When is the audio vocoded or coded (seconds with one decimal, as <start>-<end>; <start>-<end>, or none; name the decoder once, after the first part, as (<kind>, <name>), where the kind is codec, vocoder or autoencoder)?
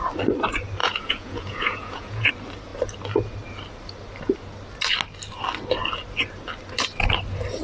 0.8-2.3 (vocoder, Vocos)